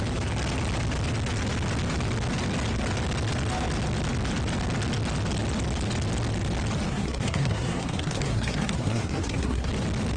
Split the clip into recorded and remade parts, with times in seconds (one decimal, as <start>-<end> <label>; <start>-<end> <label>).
0.0-6.9 recorded; 6.9-9.7 remade; 9.7-10.2 recorded